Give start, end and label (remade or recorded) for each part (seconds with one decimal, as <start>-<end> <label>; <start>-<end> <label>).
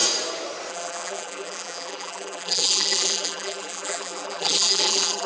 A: 0.0-0.7 recorded; 0.7-5.3 remade